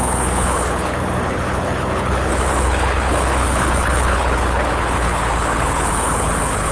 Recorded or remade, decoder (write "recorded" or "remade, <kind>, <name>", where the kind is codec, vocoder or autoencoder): remade, codec, HILCodec